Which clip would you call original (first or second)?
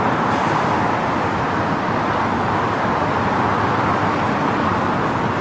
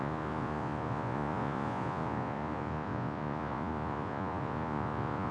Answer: first